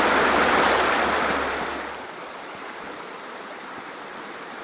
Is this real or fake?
real